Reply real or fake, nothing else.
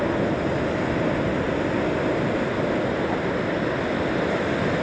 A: real